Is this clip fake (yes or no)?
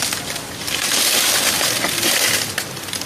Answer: no